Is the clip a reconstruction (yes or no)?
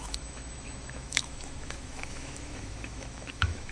yes